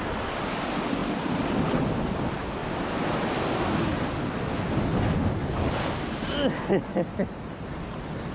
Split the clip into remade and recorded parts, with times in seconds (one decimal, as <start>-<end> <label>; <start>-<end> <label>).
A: 0.0-8.3 recorded